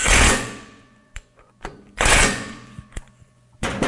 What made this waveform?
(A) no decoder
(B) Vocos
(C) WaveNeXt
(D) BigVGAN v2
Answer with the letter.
B